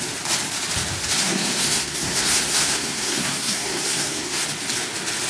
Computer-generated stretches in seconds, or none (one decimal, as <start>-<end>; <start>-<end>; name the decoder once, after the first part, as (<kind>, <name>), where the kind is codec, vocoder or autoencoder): 1.2-4.4 (codec, SNAC)